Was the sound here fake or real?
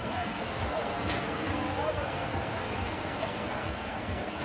fake